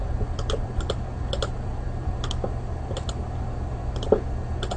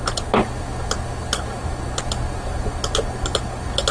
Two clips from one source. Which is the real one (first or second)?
second